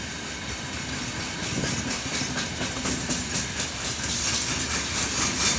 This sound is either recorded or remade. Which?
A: recorded